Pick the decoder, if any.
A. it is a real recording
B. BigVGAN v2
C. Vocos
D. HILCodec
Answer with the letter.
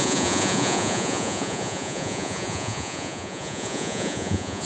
C